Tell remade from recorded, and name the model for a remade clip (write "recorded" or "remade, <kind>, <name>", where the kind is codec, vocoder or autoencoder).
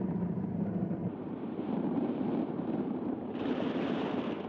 remade, vocoder, BigVGAN v2